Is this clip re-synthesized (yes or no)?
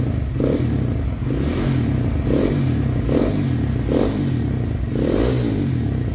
no